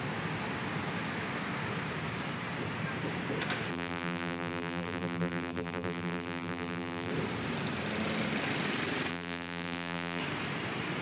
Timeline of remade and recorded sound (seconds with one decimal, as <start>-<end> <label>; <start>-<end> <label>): 0.0-3.7 recorded; 3.7-7.1 remade; 7.1-9.1 recorded; 9.1-10.2 remade; 10.2-11.0 recorded